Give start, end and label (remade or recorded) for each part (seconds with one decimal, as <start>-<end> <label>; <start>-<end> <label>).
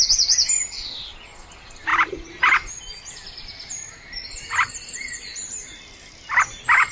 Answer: 0.0-6.9 remade